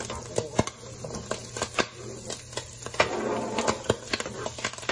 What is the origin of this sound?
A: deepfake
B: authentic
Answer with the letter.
B